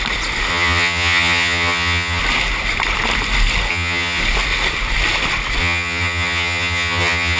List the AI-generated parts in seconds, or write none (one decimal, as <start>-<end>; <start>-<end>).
0.5-2.2; 3.7-4.2; 5.6-7.4